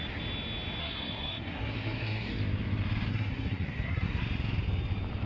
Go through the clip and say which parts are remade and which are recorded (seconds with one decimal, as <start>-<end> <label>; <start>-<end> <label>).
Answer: 0.0-0.8 recorded; 0.8-2.3 remade; 2.3-3.1 recorded; 3.1-4.2 remade; 4.2-5.3 recorded